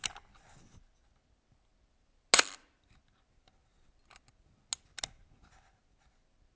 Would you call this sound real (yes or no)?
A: yes